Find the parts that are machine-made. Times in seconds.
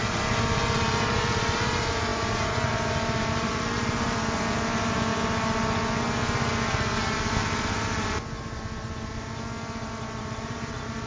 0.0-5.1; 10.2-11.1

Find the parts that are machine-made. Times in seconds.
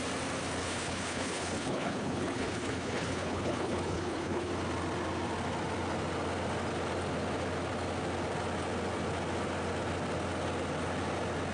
0.6-4.5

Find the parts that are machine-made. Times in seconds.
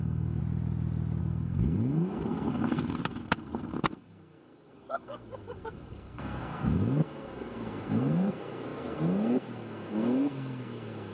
0.0-0.4; 1.2-11.1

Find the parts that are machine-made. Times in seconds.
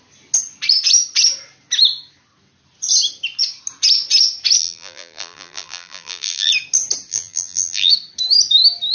4.6-6.5; 7.1-7.9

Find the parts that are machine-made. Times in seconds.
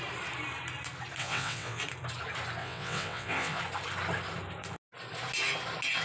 1.2-1.8; 2.6-3.6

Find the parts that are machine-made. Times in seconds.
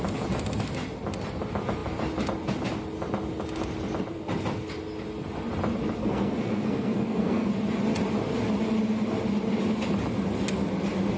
6.0-7.5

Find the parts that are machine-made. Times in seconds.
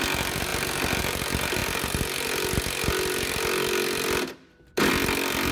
none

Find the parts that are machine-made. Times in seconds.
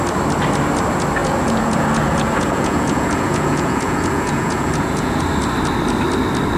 1.2-5.2